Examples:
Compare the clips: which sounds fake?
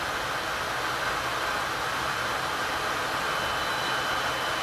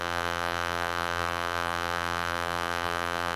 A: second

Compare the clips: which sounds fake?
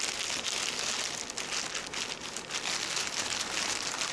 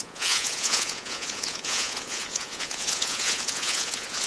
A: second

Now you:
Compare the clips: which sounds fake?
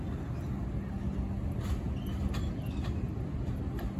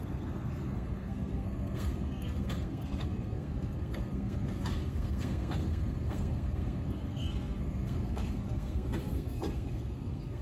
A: second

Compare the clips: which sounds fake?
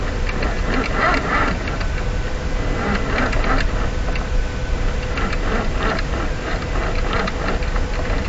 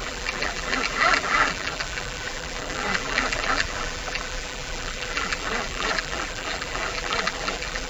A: second